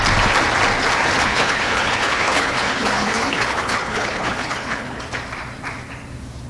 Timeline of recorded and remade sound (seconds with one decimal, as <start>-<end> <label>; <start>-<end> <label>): 0.0-1.2 recorded; 1.2-5.0 remade; 5.0-6.5 recorded